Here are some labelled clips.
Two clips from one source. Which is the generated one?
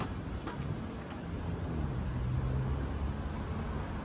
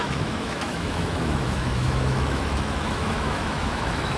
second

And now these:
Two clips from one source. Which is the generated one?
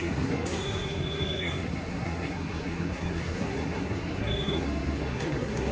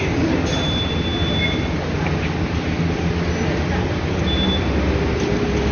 first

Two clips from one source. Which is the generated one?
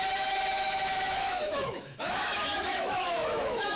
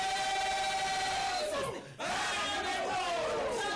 first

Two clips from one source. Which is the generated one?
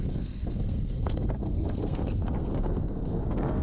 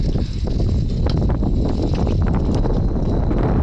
first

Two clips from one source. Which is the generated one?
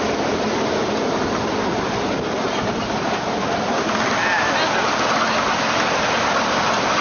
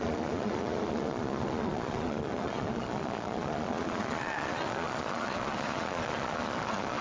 second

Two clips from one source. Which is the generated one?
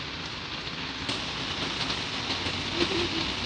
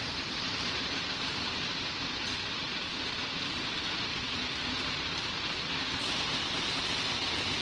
second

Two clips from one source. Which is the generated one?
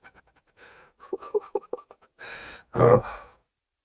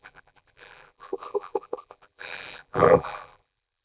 second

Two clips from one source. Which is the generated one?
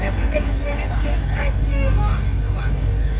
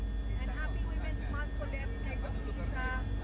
first